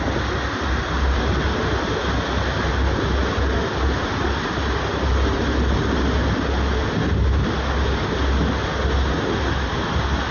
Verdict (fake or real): real